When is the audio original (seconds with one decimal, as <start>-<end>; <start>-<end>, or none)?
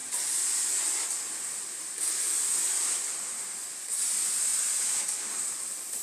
0.0-4.5; 5.4-6.0